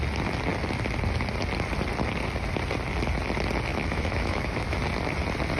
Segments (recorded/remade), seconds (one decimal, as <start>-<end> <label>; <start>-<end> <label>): 0.0-3.7 recorded; 3.7-4.8 remade; 4.8-5.6 recorded